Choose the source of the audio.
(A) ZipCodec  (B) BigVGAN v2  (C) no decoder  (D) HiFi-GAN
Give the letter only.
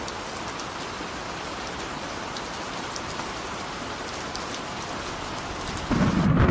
B